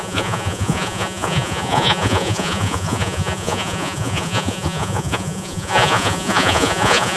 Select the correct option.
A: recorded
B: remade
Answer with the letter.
B